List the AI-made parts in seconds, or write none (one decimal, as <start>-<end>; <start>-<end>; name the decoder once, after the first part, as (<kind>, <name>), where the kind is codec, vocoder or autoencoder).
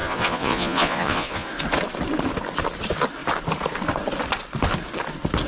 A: 0.0-1.5 (vocoder, Vocos)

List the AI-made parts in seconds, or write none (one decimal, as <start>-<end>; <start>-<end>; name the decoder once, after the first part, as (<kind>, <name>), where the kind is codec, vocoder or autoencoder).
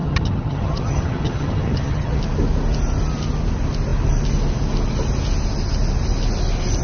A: 0.0-2.2 (vocoder, HiFi-GAN)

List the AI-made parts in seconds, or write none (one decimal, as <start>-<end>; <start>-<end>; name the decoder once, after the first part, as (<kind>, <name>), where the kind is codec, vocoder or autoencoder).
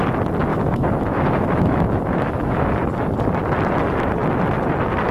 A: 0.5-2.6 (autoencoder, DAC-VAE)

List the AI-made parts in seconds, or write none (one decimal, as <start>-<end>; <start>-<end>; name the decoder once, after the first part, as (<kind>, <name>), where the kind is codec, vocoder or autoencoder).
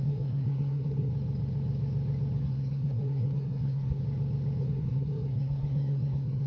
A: 0.0-1.1 (codec, SNAC); 2.4-4.0; 4.6-6.5